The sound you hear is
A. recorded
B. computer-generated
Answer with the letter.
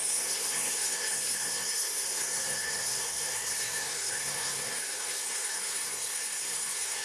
B